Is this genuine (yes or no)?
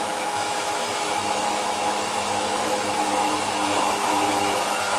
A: no